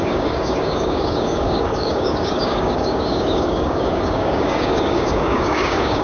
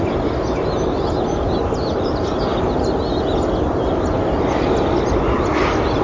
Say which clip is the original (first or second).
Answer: second